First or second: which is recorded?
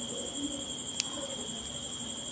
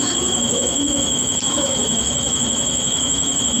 first